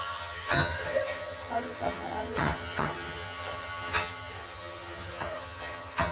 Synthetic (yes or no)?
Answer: yes